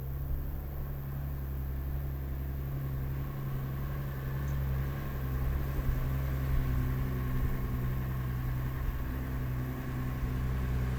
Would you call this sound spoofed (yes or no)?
no